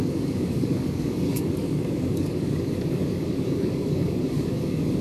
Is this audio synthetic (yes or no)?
yes